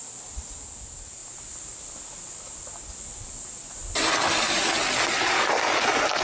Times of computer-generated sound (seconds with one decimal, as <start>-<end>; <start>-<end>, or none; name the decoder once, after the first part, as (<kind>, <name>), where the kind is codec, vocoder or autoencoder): none